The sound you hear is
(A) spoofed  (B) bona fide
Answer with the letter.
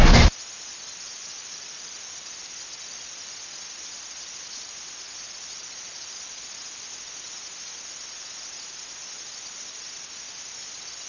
B